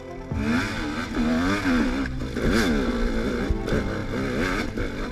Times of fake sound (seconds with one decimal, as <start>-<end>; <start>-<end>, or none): none